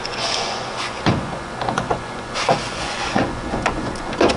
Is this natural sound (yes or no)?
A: no